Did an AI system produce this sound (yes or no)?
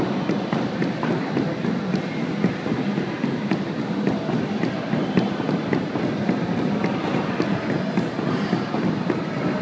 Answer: no